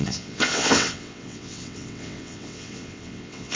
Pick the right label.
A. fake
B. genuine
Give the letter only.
A